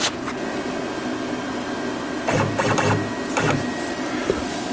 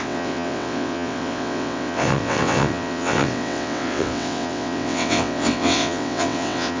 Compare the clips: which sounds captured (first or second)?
first